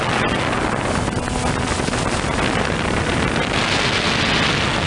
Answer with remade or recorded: recorded